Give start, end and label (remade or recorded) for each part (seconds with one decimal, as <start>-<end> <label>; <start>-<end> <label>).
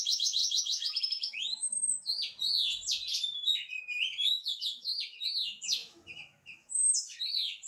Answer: 0.0-1.8 remade; 1.8-3.8 recorded; 3.8-7.7 remade